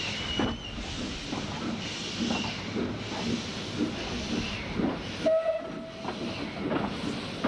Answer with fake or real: real